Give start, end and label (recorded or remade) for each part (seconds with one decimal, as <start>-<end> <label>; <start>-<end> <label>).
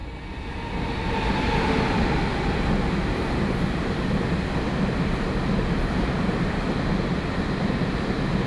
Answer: 0.0-8.5 recorded